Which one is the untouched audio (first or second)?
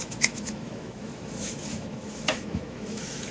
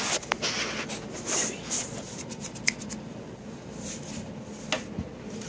second